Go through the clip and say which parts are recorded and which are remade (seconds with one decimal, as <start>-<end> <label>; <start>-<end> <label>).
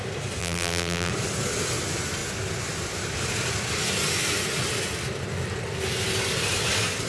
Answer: 0.0-0.4 recorded; 0.4-1.1 remade; 1.1-7.1 recorded